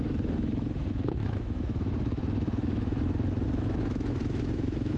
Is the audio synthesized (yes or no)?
yes